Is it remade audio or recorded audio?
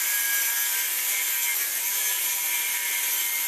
recorded